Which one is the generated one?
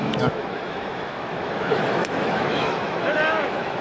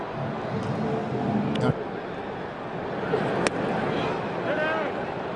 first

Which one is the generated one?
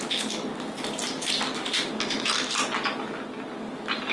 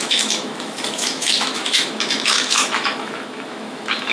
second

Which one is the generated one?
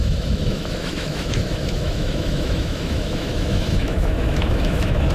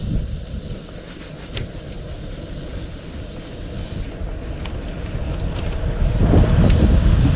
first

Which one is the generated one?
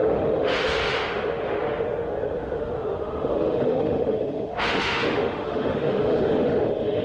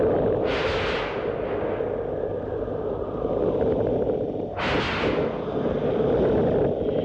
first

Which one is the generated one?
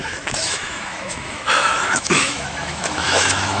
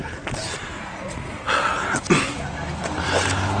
first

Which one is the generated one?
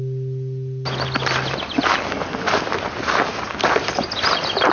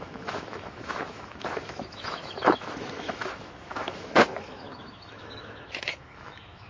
second